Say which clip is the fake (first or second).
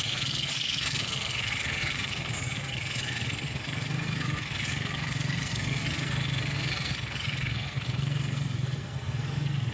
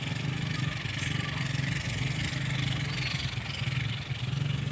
first